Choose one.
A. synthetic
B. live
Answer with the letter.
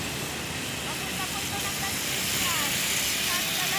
B